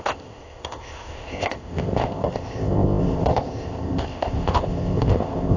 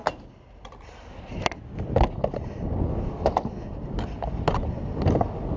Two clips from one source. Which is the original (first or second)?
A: second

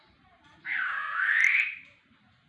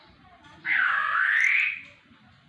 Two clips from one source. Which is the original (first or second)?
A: second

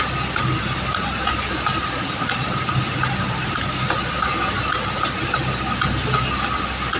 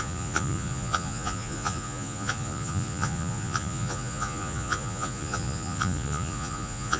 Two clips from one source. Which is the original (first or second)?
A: first